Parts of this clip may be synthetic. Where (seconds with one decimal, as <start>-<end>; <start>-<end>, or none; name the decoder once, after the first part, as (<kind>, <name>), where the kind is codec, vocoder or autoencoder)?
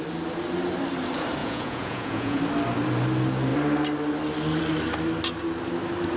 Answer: 1.4-2.4 (vocoder, Vocos)